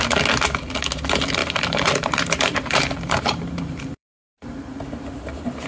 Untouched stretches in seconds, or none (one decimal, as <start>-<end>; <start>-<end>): 0.0-1.4; 4.8-5.7